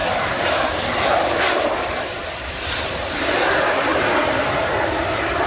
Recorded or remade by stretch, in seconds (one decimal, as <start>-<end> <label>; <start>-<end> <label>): 0.0-3.9 remade; 3.9-4.9 recorded; 4.9-5.5 remade